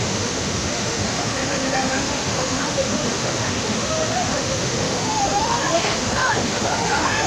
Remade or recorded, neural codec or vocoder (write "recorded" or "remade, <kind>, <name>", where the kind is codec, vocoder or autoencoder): remade, autoencoder, DAC-VAE